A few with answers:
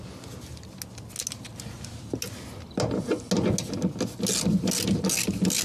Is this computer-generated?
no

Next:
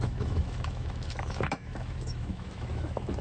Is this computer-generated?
yes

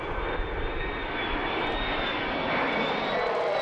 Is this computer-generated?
no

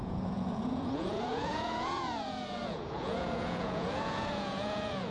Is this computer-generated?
yes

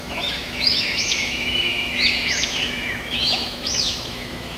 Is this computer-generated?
yes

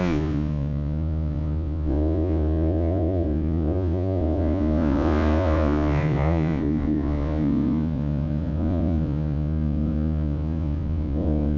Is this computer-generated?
yes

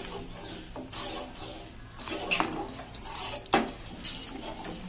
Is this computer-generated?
no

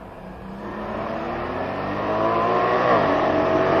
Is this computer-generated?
yes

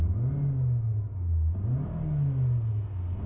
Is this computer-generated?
no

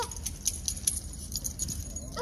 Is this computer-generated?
no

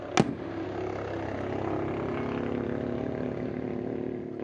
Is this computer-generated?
no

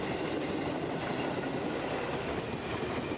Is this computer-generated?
no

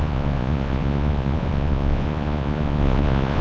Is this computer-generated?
yes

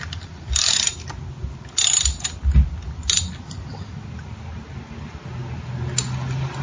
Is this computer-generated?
no